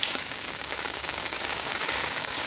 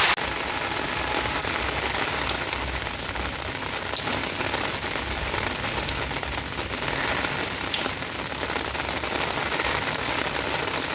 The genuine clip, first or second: second